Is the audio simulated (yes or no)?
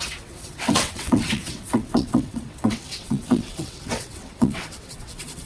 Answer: yes